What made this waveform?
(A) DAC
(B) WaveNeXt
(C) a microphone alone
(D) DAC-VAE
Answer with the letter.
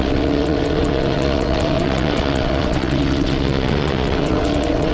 B